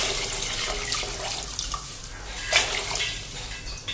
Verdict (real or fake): real